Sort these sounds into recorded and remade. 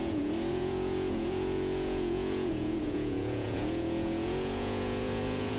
remade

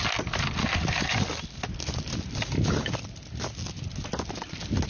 recorded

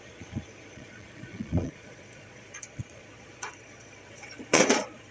remade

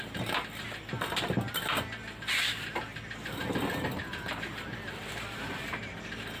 recorded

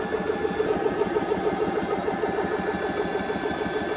recorded